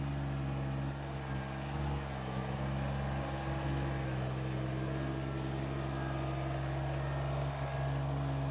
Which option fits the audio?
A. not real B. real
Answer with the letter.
B